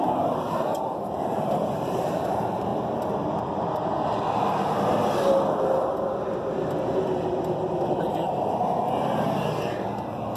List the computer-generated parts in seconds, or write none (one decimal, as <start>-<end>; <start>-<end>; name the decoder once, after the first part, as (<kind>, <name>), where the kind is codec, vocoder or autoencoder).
0.0-2.7 (vocoder, BigVGAN v2); 8.0-10.4